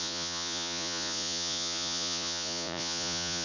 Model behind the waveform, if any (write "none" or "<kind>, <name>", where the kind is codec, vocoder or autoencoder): vocoder, Vocos